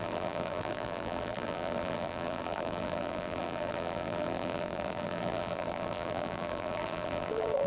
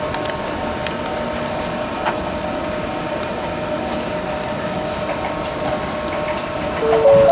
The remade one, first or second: first